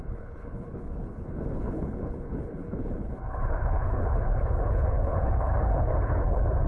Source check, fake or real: fake